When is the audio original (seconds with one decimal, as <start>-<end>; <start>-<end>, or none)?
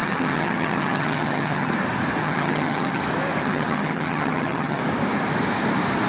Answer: 1.7-2.2; 3.0-3.4; 4.8-6.1